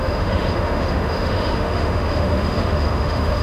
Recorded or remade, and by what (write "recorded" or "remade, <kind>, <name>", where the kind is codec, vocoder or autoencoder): remade, autoencoder, DAC-VAE